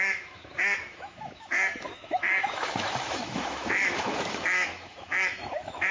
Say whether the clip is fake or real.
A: fake